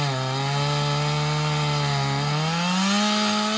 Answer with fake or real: real